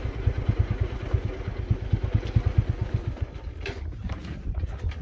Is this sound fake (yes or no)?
no